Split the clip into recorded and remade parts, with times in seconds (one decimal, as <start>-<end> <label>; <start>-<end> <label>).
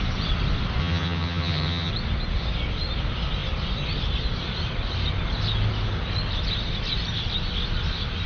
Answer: 0.0-0.8 recorded; 0.8-1.9 remade; 1.9-8.3 recorded